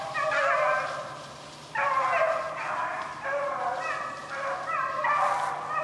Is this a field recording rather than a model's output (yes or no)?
yes